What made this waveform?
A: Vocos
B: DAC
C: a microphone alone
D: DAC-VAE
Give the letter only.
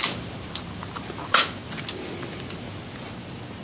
C